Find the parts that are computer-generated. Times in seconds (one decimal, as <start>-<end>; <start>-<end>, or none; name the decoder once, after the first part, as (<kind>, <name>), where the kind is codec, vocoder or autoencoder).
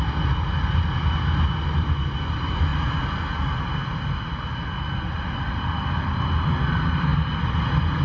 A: none